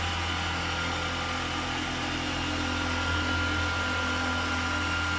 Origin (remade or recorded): recorded